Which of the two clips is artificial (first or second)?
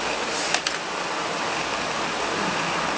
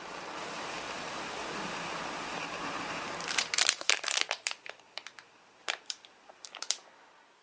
second